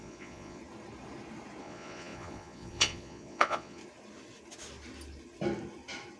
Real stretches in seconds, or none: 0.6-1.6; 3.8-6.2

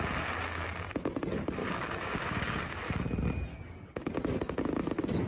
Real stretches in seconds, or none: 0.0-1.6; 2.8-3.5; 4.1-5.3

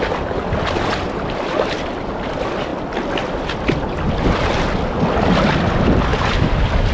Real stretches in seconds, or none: 0.0-6.9

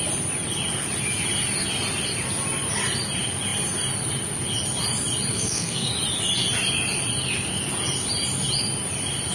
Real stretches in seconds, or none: 0.0-5.3; 5.9-9.3